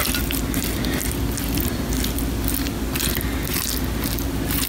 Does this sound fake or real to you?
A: real